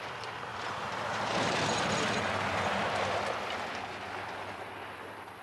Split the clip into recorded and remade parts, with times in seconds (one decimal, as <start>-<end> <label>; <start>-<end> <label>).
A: 0.0-5.4 recorded